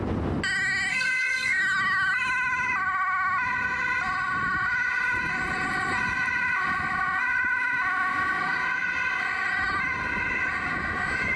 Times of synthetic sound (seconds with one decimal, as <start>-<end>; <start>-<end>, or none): 0.9-1.6